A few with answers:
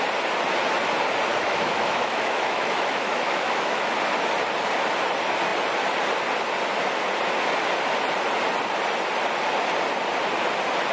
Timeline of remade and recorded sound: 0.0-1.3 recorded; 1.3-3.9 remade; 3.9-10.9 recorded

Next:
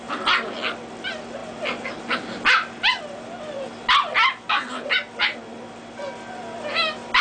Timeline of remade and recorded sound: 0.0-7.2 recorded

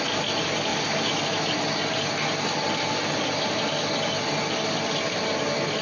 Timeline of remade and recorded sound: 0.0-5.8 recorded

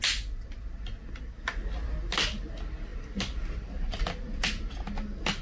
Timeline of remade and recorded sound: 0.0-5.4 recorded